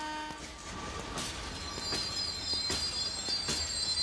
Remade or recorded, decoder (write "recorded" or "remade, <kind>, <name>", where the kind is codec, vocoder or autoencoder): recorded